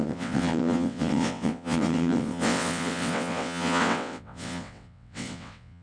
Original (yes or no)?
no